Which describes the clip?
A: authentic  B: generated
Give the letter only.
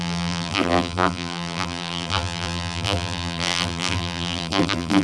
B